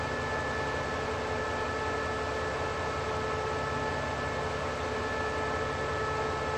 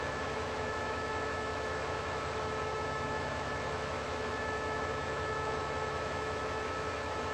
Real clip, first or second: first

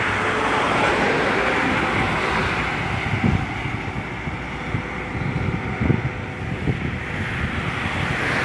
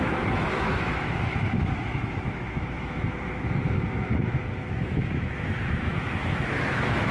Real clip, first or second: first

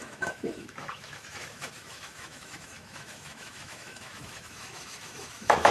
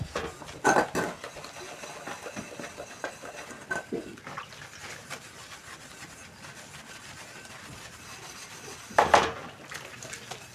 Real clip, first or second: second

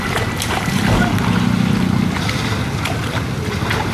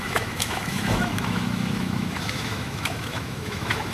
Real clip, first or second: first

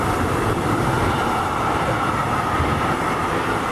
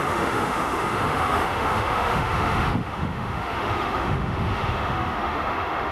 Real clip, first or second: first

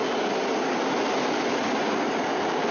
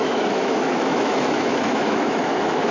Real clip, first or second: first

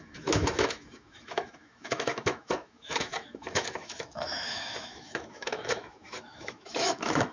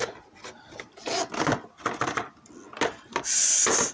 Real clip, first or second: second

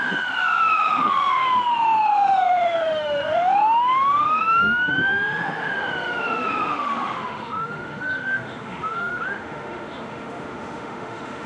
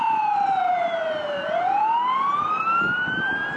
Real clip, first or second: second